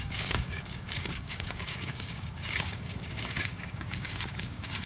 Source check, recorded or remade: remade